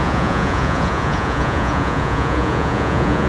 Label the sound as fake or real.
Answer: fake